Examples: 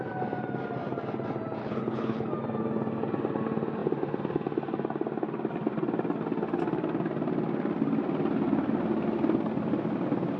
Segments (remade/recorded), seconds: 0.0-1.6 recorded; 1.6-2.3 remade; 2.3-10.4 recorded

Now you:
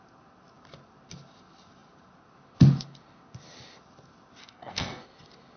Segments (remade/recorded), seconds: 0.0-4.4 recorded; 4.4-5.0 remade; 5.0-5.6 recorded